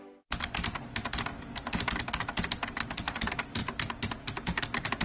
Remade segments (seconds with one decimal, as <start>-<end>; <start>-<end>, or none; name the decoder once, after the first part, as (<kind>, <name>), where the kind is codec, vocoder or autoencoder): none